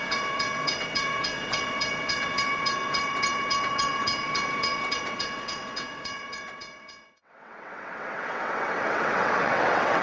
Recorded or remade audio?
remade